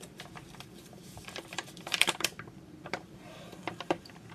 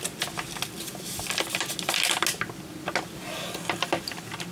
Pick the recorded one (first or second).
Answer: second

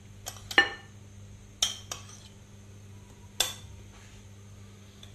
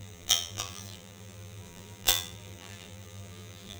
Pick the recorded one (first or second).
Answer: first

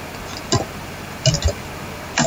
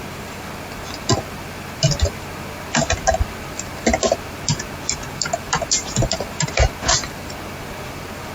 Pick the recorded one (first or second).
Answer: second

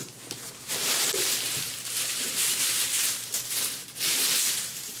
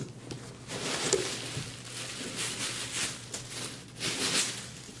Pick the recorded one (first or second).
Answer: second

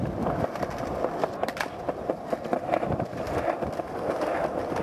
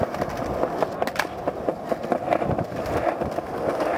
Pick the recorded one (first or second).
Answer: second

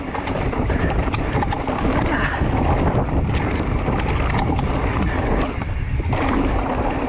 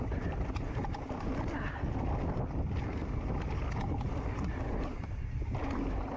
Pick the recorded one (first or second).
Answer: second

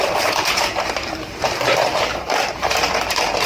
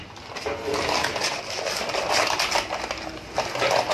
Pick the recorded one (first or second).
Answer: second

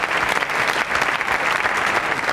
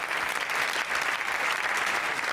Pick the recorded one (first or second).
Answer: second